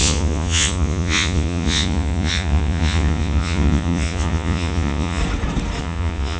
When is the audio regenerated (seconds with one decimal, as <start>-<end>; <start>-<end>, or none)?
0.0-5.2; 5.8-6.4